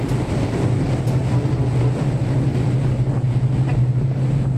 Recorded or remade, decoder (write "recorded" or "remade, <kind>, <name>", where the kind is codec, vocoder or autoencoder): recorded